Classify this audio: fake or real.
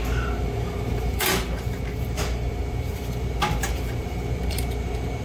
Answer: fake